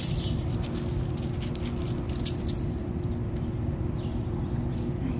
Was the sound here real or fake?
real